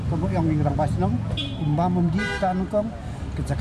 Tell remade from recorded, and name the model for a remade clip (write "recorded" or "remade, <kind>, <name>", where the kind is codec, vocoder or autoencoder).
recorded